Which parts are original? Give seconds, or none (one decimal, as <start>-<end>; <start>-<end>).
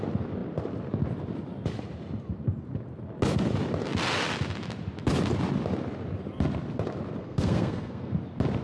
0.0-7.2; 8.1-8.6